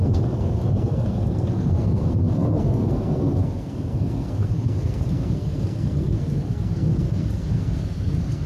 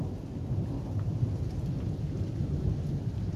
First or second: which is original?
second